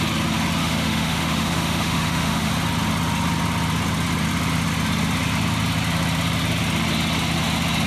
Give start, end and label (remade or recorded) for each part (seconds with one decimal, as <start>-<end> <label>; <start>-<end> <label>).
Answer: 0.0-0.6 recorded; 0.6-2.5 remade; 2.5-7.9 recorded